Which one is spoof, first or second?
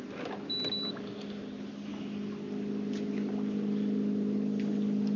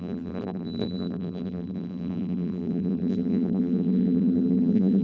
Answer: second